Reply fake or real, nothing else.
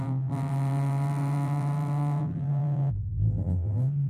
fake